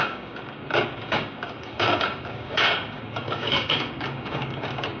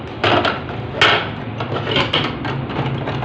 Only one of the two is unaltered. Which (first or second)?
second